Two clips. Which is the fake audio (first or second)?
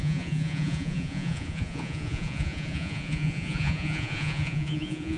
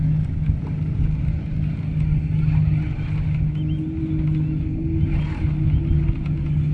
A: first